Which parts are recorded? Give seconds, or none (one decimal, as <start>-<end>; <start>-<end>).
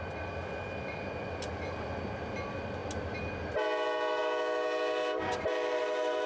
0.0-5.0